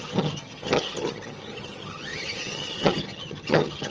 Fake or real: fake